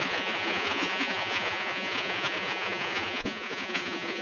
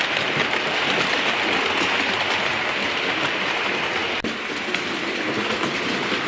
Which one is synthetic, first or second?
first